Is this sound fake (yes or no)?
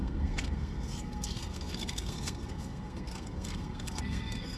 yes